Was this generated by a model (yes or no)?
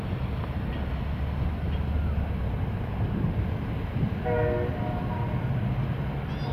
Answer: no